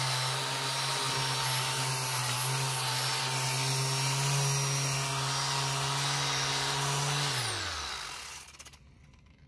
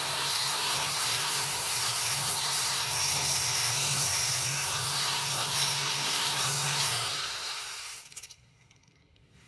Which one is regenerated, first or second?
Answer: second